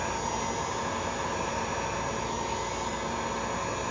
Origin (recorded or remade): recorded